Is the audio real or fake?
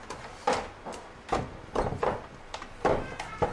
real